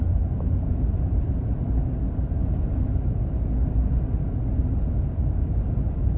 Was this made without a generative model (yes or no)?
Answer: yes